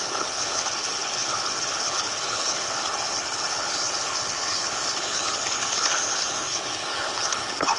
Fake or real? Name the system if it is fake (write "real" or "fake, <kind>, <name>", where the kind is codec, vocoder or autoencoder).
fake, codec, HILCodec